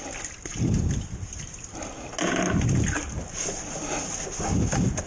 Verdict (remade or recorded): recorded